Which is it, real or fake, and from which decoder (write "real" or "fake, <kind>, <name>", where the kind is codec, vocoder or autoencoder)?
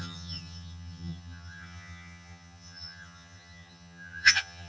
fake, vocoder, HiFi-GAN